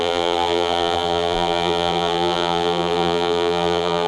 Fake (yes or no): yes